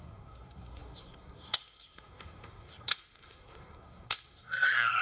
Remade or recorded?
remade